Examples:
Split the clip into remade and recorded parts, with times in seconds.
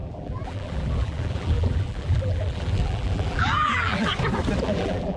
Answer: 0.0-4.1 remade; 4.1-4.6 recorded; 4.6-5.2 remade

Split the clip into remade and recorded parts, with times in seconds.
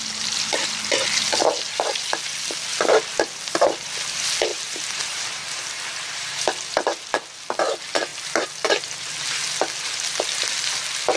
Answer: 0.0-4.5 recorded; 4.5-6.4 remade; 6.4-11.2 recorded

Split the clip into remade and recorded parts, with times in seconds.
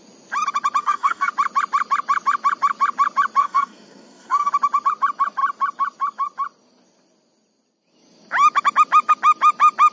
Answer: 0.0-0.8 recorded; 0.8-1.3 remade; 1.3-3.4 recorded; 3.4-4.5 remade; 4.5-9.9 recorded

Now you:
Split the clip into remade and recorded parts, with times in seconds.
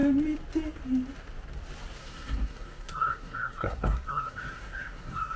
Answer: 0.0-2.0 recorded; 2.0-5.4 remade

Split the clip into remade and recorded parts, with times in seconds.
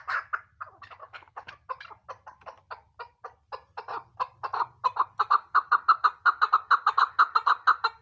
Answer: 0.0-1.0 recorded; 1.0-1.5 remade; 1.5-8.0 recorded